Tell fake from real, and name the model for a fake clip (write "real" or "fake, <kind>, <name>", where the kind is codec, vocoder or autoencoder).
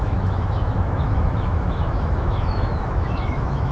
fake, autoencoder, DAC-VAE